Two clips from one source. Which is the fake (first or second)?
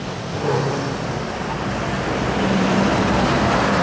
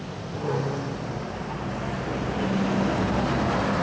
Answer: first